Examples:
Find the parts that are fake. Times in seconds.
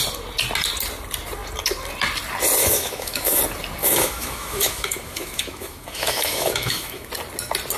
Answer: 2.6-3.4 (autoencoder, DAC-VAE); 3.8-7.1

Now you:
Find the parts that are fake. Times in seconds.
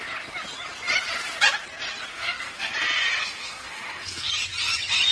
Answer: 2.1-2.7 (codec, SNAC); 3.2-4.3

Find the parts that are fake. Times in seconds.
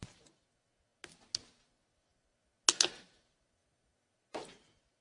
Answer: none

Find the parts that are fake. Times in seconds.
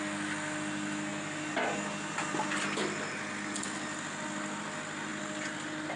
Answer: none